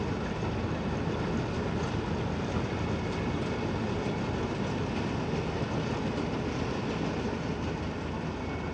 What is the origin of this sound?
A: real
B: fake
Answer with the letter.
A